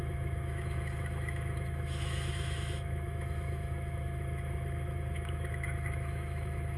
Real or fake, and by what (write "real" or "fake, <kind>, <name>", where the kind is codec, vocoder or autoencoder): fake, autoencoder, DAC-VAE